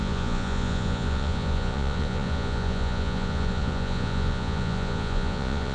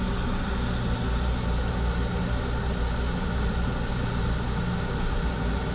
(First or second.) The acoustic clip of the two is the second